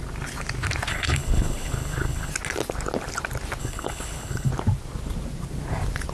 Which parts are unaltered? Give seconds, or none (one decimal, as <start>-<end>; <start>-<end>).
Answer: 0.0-0.9; 2.3-3.6; 4.5-6.1